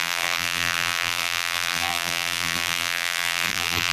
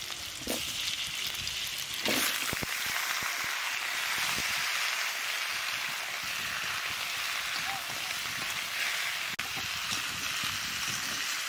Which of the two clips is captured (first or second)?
second